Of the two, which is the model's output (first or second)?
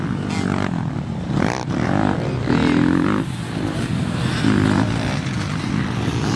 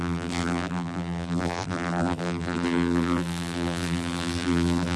second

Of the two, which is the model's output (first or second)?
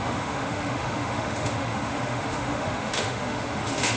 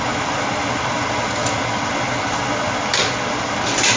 first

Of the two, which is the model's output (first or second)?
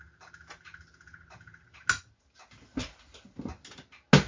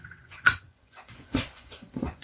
second